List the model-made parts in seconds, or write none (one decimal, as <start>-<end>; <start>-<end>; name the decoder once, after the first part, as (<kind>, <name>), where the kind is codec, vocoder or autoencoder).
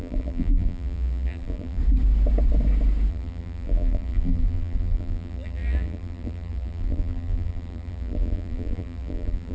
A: 0.0-1.8 (vocoder, BigVGAN v2); 3.1-9.5